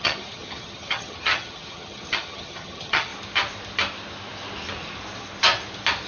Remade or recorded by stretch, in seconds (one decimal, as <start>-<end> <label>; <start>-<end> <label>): 0.0-3.1 remade; 3.1-6.1 recorded